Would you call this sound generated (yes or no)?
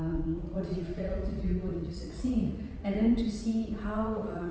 yes